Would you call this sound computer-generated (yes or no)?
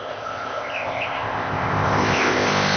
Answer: yes